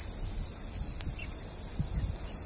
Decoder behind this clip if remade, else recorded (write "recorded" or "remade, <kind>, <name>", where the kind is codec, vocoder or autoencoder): recorded